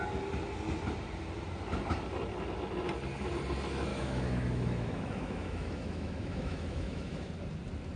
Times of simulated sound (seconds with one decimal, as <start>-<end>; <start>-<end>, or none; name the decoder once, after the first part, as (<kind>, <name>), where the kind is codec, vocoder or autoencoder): 3.9-7.3 (autoencoder, DAC-VAE)